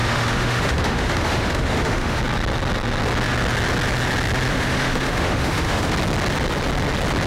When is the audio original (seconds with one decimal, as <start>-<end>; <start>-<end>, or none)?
2.2-4.5; 5.9-7.3